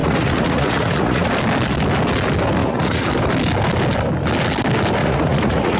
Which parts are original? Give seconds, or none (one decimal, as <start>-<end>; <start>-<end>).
1.3-2.6; 3.1-5.0